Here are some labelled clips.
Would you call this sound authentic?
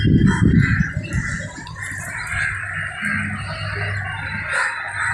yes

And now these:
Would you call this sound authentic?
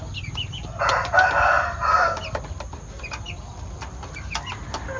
yes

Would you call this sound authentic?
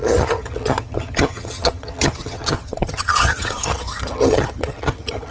no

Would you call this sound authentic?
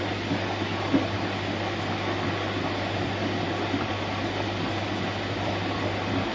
yes